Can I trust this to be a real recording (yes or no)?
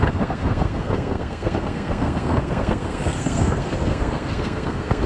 no